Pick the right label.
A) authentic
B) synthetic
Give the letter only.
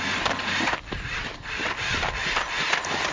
A